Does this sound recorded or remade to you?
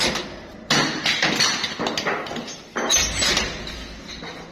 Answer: recorded